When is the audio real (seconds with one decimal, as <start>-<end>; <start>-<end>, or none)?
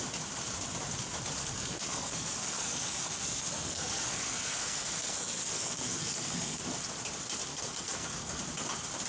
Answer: 0.0-1.4; 6.6-7.5; 8.4-9.1